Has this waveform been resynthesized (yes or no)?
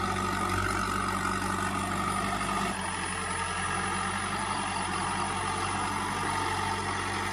no